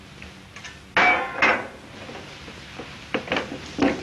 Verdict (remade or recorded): recorded